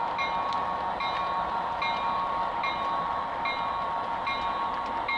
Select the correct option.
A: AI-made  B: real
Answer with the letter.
B